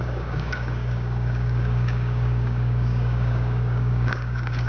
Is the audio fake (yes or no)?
yes